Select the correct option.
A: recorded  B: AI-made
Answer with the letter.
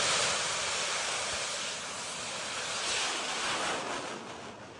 A